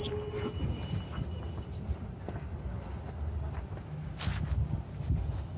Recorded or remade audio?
recorded